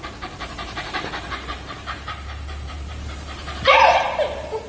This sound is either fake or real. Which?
fake